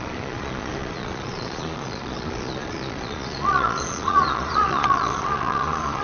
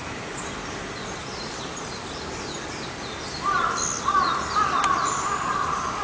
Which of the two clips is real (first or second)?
second